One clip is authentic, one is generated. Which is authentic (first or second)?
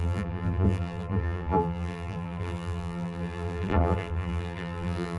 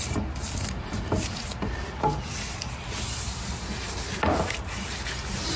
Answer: second